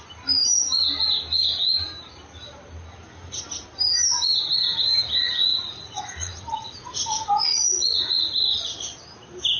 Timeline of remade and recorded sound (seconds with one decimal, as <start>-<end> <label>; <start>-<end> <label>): 0.0-5.5 recorded; 5.5-8.2 remade; 8.2-9.6 recorded